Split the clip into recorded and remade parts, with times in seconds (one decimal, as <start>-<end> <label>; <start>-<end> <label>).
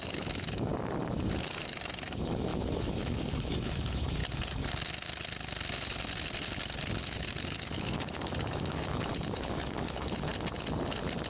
0.0-0.7 remade; 0.7-1.5 recorded; 1.5-4.2 remade; 4.2-7.4 recorded; 7.4-10.3 remade; 10.3-11.3 recorded